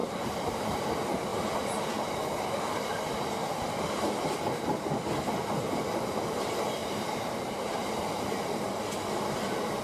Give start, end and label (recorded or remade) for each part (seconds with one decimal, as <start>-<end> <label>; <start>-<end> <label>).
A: 0.0-0.9 remade; 0.9-6.8 recorded; 6.8-8.8 remade; 8.8-9.8 recorded